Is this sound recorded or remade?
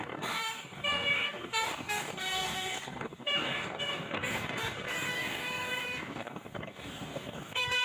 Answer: remade